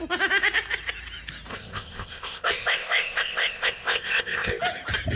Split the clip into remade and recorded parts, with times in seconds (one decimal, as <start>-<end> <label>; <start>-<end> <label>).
0.0-1.5 recorded; 1.5-4.6 remade; 4.6-5.2 recorded